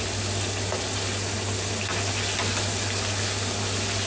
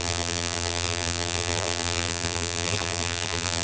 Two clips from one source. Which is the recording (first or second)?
first